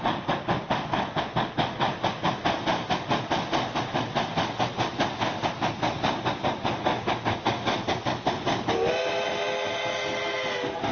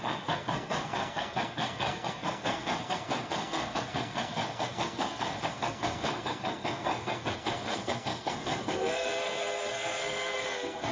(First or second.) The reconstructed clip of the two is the second